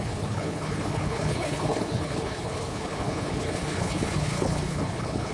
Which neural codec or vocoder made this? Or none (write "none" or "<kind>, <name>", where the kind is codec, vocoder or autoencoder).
codec, HILCodec